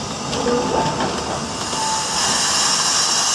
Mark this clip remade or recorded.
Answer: recorded